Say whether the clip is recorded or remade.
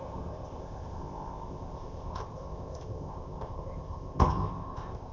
remade